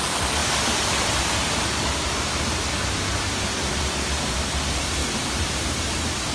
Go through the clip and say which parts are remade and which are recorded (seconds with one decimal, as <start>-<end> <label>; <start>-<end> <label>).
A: 0.0-6.3 recorded